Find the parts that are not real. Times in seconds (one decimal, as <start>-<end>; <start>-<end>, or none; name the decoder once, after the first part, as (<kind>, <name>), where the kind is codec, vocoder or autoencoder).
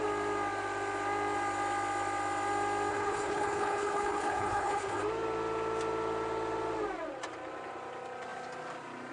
2.9-5.0 (codec, HILCodec)